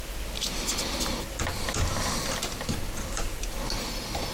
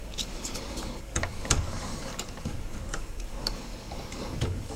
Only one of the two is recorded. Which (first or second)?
first